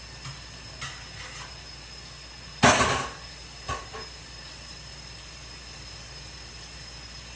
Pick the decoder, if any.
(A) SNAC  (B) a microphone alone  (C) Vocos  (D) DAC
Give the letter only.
B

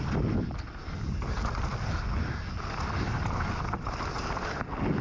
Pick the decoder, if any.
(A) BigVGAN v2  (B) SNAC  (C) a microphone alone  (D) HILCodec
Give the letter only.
C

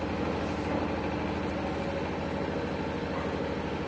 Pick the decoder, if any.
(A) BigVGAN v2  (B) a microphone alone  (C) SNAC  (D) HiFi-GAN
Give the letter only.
B